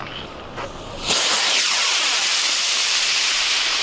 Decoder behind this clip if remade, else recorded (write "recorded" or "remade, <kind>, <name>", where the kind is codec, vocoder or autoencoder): recorded